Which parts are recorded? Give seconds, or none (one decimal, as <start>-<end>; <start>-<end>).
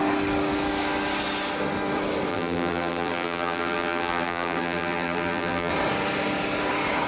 0.0-2.3; 5.7-7.1